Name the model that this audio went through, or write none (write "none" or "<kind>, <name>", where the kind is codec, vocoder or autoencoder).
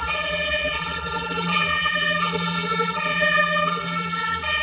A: vocoder, BigVGAN v2